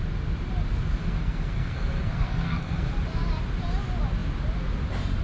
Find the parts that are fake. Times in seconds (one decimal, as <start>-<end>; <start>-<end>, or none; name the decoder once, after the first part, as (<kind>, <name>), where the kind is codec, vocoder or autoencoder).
1.0-2.9 (codec, SNAC)